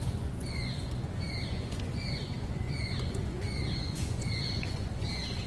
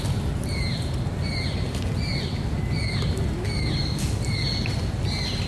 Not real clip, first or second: first